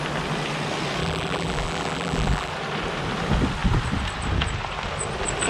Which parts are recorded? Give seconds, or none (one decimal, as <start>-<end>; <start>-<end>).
0.0-1.0; 2.5-5.5